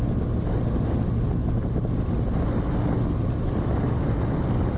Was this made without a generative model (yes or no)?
yes